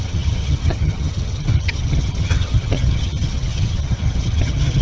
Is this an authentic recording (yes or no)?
no